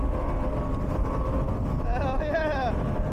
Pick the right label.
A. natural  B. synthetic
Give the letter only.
A